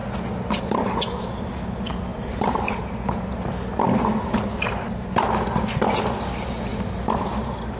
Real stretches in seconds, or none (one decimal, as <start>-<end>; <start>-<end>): 0.0-2.1; 2.8-6.7